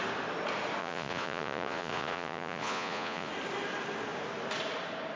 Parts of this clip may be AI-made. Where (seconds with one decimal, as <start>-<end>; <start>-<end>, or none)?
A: 0.8-3.3